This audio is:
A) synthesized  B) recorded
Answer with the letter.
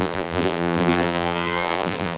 A